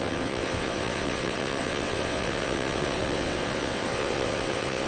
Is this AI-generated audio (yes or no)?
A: yes